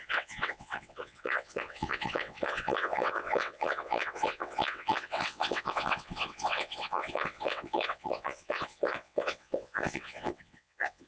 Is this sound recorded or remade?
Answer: remade